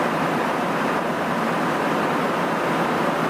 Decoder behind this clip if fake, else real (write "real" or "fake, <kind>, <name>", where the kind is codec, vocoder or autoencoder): real